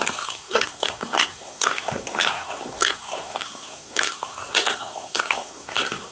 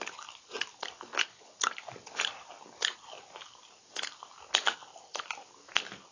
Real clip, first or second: second